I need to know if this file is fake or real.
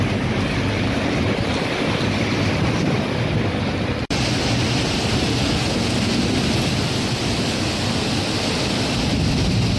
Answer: real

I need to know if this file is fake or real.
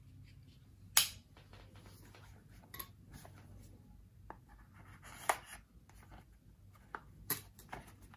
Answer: real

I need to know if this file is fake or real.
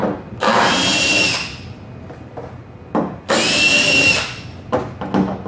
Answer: real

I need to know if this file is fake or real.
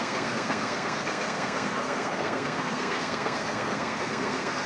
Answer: fake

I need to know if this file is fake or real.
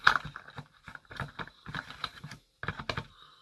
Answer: real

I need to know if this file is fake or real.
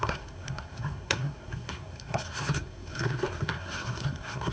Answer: fake